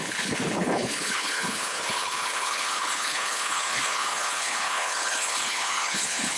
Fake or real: fake